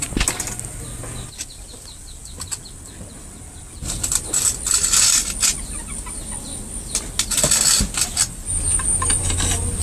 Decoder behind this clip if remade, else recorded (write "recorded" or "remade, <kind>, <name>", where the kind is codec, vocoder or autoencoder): recorded